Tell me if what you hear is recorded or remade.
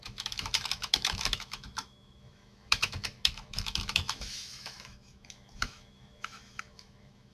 remade